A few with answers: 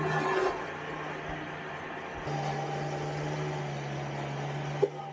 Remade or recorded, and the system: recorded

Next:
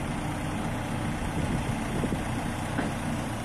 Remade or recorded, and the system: recorded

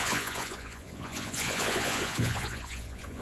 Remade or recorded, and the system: remade, vocoder, Vocos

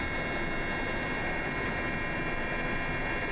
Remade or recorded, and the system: recorded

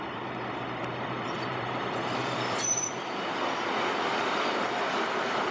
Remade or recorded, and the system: remade, vocoder, BigVGAN v2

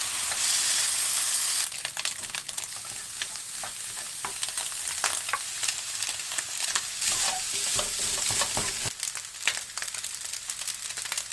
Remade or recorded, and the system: recorded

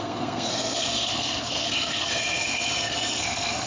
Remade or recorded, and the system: remade, codec, SNAC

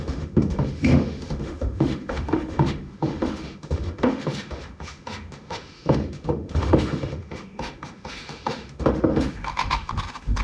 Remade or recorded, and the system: remade, autoencoder, DAC-VAE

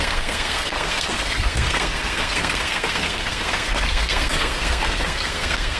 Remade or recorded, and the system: remade, codec, SNAC